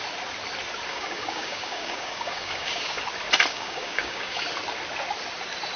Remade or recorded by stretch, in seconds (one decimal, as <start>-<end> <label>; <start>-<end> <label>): 0.0-0.9 recorded; 0.9-3.0 remade; 3.0-3.5 recorded; 3.5-4.4 remade; 4.4-5.8 recorded